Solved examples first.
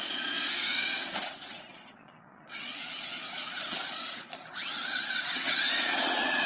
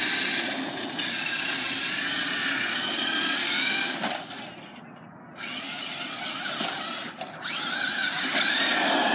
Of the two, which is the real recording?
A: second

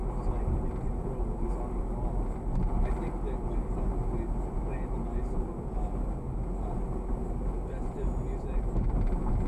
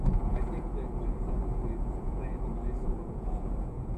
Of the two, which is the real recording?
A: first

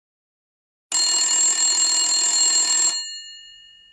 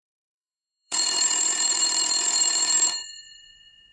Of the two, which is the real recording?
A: first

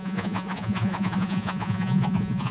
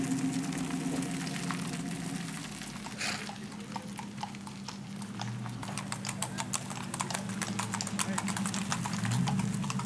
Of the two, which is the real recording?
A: second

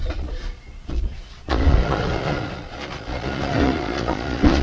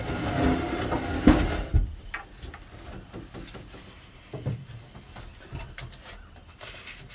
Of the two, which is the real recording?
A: second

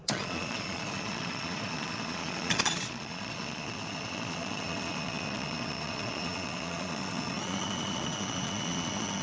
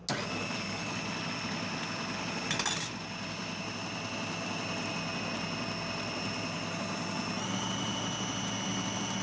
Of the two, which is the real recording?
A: second